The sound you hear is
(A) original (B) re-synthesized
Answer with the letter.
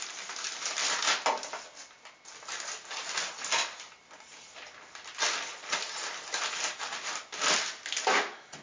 A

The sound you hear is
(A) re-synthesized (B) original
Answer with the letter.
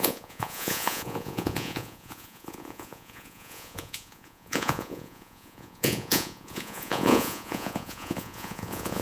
A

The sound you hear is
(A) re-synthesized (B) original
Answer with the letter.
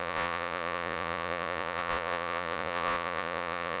A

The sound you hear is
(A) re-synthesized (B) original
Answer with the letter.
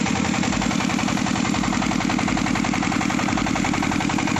B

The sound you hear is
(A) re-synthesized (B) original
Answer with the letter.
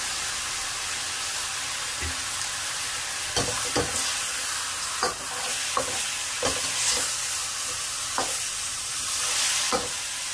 B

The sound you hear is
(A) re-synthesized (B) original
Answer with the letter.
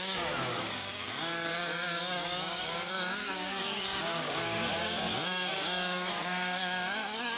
A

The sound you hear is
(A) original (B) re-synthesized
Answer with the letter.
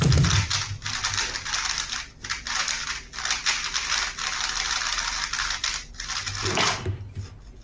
A